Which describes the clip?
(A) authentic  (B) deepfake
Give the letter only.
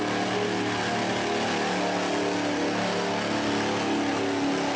A